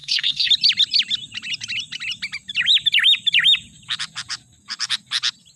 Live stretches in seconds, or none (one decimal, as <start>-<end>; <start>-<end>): 0.5-5.6